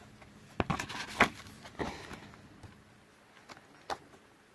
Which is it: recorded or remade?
recorded